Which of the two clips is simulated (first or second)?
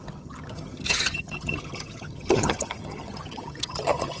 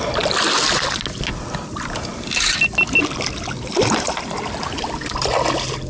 first